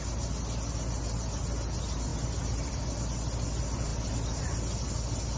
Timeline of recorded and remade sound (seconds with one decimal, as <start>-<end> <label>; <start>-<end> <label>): 0.0-5.4 recorded